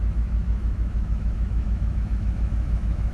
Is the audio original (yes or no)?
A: no